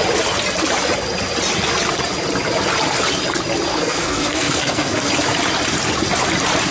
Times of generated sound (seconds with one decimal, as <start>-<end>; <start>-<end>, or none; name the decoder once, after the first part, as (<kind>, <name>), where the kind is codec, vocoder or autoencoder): 3.7-5.1 (codec, SNAC)